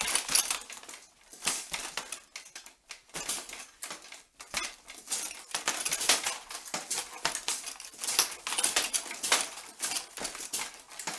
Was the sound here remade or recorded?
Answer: recorded